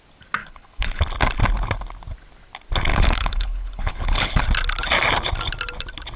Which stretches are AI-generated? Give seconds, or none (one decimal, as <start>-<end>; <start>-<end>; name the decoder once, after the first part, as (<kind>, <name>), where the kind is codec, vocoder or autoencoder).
0.4-1.0 (codec, HILCodec); 2.9-4.4